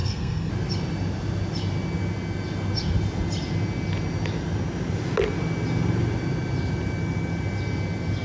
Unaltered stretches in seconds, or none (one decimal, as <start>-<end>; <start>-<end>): 0.5-8.2